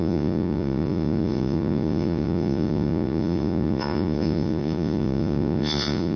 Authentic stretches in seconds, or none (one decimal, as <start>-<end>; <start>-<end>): none